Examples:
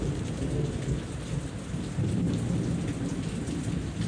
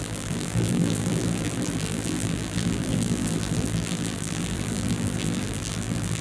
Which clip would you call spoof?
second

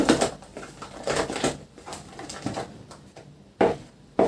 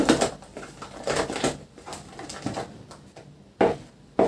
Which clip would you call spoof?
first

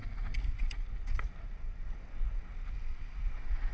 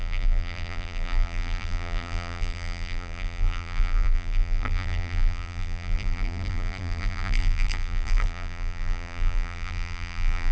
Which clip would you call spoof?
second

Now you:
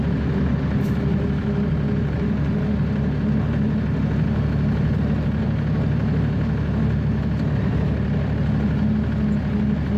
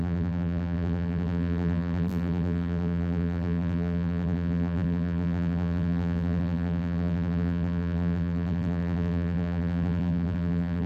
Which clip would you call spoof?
second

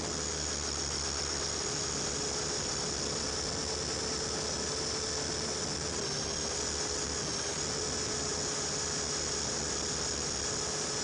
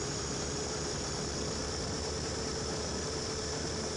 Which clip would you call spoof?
second